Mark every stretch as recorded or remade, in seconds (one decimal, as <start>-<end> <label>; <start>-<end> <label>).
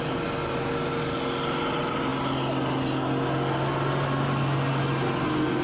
0.0-5.6 recorded